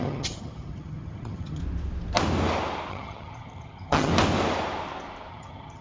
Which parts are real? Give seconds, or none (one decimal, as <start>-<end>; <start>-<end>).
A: 1.6-2.9; 4.1-5.3